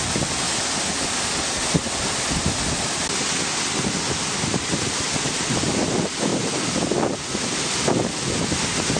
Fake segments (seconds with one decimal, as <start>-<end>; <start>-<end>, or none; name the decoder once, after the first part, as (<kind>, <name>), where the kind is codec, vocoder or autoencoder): none